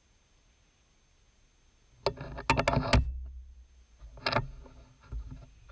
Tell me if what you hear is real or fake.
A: real